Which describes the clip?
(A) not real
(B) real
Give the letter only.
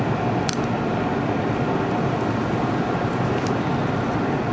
B